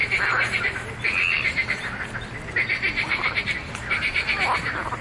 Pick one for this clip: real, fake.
real